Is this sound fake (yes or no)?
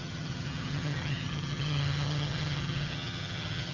yes